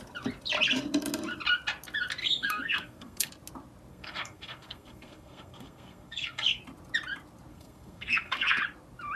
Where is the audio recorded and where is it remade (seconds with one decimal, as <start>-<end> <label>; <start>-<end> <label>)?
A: 0.0-2.2 recorded; 2.2-3.3 remade; 3.3-3.9 recorded; 3.9-6.6 remade; 6.6-7.5 recorded; 7.5-8.6 remade; 8.6-9.2 recorded